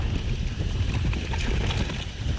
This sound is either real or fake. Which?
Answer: real